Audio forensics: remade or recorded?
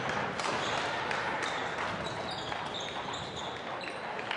recorded